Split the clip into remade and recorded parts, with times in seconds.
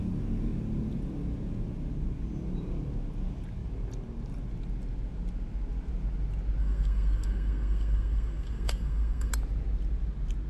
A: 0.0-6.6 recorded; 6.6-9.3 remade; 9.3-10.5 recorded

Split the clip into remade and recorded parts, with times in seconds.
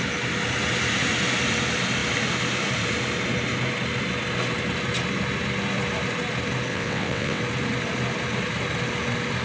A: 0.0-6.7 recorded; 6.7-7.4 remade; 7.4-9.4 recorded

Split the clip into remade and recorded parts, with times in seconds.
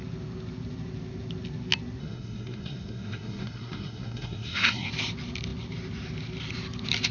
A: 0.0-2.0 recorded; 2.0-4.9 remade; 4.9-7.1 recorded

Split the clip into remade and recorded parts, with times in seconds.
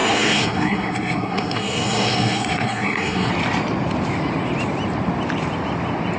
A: 0.0-3.3 remade; 3.3-6.2 recorded